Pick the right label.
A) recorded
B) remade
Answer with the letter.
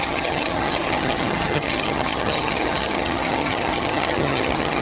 B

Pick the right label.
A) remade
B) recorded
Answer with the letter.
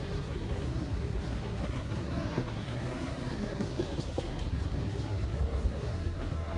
A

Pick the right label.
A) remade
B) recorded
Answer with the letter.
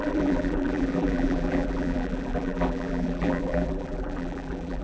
A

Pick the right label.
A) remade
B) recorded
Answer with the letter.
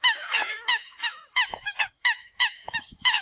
A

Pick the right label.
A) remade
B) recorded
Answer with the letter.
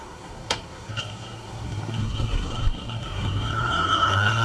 A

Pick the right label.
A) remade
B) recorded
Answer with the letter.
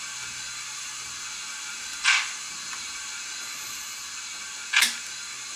B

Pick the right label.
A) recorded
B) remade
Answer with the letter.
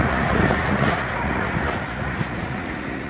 B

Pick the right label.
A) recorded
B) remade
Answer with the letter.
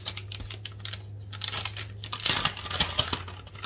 A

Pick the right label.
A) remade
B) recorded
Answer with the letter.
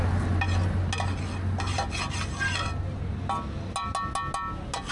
B